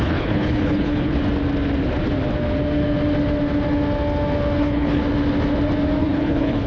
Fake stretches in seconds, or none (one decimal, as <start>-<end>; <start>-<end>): 0.0-1.2; 4.6-5.0; 6.0-6.7